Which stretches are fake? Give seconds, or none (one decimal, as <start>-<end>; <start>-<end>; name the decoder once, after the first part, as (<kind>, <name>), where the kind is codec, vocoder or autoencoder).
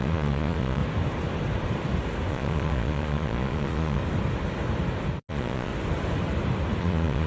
0.0-0.8 (vocoder, Vocos); 2.3-4.0; 5.3-5.7; 6.8-7.3